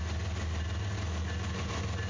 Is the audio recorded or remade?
recorded